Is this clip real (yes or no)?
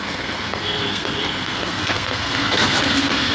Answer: no